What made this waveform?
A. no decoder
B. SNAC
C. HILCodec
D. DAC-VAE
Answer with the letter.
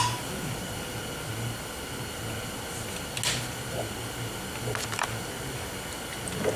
A